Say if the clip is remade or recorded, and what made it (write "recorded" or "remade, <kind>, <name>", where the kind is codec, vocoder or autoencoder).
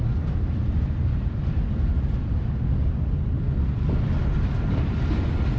recorded